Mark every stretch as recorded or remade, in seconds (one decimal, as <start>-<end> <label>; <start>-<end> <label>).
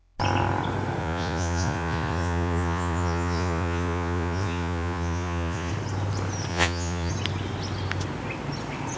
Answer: 0.0-1.0 recorded; 1.0-5.7 remade; 5.7-6.5 recorded; 6.5-7.1 remade; 7.1-9.0 recorded